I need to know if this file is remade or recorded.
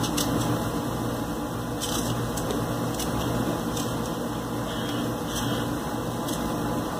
recorded